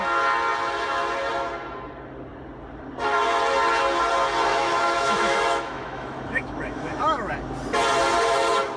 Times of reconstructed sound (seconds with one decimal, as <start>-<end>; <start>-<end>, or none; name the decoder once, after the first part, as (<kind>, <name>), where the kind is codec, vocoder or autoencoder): 4.5-7.3 (autoencoder, DAC-VAE)